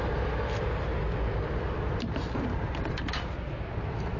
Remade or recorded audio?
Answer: recorded